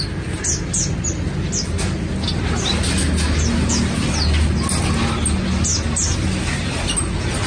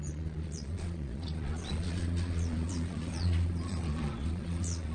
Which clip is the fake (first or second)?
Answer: second